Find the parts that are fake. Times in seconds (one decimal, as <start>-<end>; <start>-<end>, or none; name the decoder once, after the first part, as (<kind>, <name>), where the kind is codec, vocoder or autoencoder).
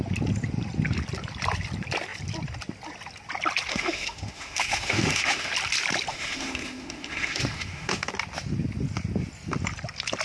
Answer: 3.7-5.5 (autoencoder, DAC-VAE); 6.1-8.1